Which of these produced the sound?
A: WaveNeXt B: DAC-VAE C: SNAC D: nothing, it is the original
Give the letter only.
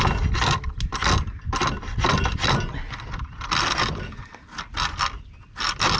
D